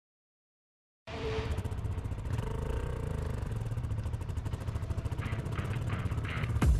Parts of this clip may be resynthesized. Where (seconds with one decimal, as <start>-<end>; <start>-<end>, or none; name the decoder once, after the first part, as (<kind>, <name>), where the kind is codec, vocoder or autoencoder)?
0.0-3.5 (vocoder, BigVGAN v2); 4.4-6.8